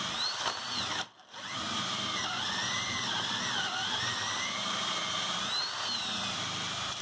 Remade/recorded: remade